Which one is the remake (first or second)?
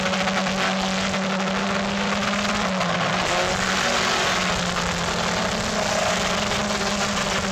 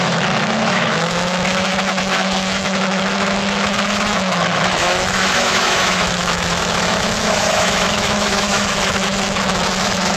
second